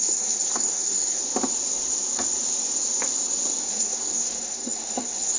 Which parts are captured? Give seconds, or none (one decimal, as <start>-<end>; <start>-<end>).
1.2-3.6

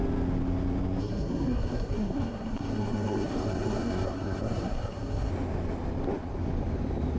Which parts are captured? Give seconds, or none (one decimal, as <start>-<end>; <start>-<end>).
0.0-1.0; 5.3-7.2

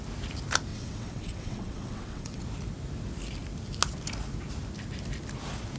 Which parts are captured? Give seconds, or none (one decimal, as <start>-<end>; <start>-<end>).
0.0-0.7; 2.4-5.8

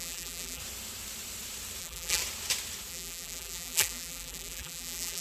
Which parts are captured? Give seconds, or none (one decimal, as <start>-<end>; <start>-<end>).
0.6-1.8; 2.2-2.9

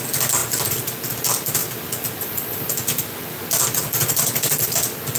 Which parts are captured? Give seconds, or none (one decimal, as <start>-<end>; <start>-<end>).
0.0-5.2